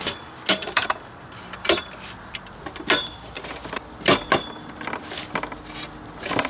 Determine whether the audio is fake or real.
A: real